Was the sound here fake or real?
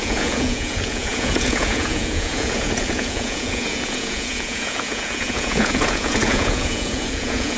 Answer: fake